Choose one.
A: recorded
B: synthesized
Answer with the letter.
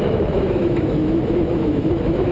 B